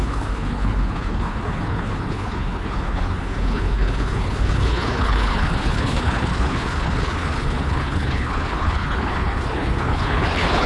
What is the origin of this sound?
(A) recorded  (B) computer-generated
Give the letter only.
B